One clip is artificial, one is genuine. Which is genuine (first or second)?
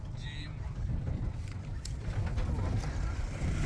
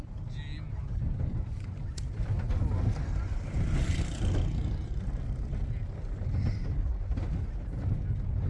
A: second